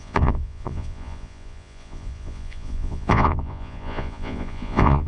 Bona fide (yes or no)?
no